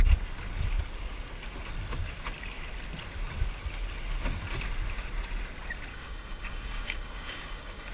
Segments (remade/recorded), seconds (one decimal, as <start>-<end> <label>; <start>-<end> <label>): 0.0-5.9 recorded; 5.9-7.9 remade